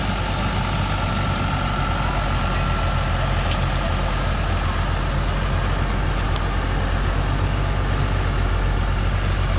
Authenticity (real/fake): real